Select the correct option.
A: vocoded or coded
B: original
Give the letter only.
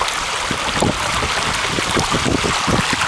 B